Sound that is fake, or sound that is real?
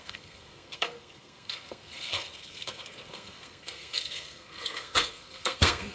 fake